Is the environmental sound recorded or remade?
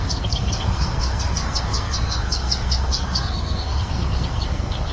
remade